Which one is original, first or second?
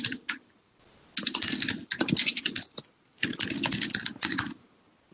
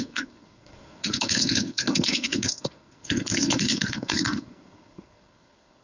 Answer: first